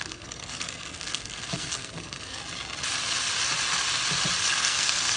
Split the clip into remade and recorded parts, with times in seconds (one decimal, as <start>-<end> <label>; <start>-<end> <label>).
0.0-2.4 remade; 2.4-4.5 recorded; 4.5-5.2 remade